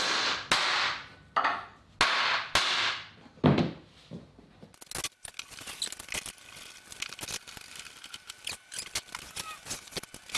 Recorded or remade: recorded